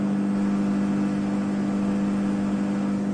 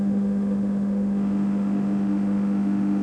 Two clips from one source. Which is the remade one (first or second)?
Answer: second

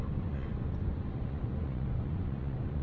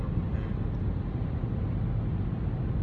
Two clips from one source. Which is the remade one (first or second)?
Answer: first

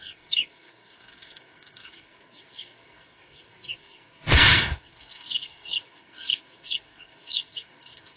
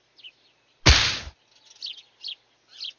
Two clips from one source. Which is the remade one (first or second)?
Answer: first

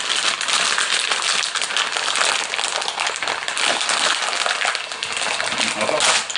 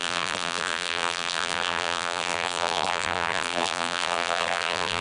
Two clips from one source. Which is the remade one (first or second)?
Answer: second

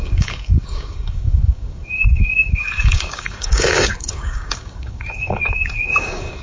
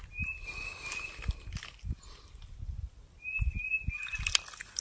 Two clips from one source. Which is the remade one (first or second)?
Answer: first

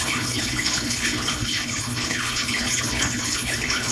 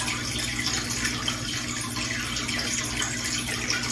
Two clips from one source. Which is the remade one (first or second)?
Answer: first